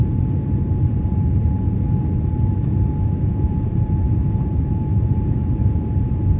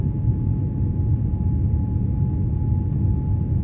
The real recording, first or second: second